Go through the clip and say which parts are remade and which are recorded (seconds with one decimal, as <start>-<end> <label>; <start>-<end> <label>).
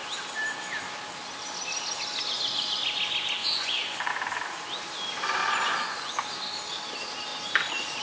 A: 0.0-3.4 recorded; 3.4-4.1 remade; 4.1-5.4 recorded; 5.4-6.1 remade; 6.1-8.0 recorded